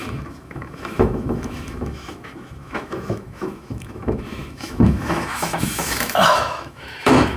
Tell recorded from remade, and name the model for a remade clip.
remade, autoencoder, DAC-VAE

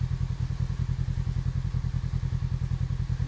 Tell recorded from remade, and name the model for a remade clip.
recorded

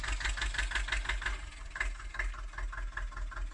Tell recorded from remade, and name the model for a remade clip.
recorded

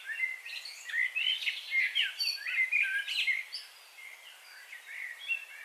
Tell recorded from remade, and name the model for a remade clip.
recorded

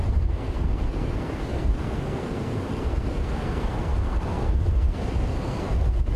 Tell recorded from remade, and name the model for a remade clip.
remade, codec, SNAC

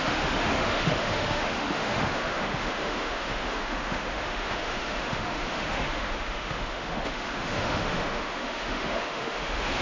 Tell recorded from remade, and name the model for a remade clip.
remade, autoencoder, DAC-VAE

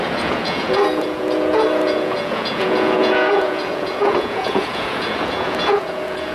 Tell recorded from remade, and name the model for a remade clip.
remade, vocoder, Vocos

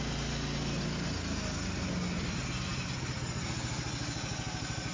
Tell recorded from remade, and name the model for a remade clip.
recorded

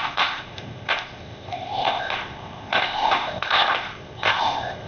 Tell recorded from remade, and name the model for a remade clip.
remade, codec, ZipCodec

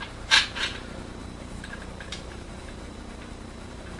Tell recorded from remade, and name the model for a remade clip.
remade, vocoder, BigVGAN v2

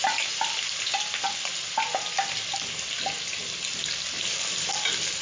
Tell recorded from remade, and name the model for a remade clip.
recorded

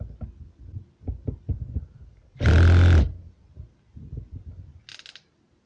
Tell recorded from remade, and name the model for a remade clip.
recorded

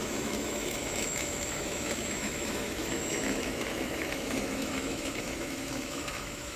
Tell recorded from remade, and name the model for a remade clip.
remade, autoencoder, DAC-VAE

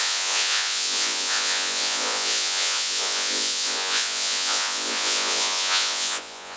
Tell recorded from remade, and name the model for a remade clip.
remade, vocoder, Vocos